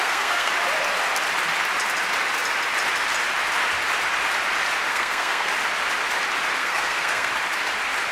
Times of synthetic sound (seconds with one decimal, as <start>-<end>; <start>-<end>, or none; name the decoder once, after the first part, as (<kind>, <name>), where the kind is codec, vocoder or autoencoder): 0.0-0.5 (codec, SNAC); 4.9-5.5; 6.6-7.3